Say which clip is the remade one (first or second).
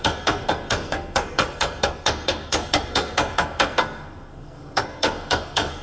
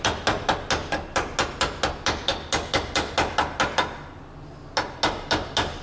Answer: first